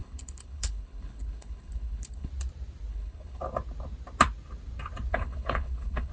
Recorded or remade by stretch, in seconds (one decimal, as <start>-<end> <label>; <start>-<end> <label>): 0.0-2.3 remade; 2.3-2.9 recorded; 2.9-3.4 remade; 3.4-5.1 recorded; 5.1-6.1 remade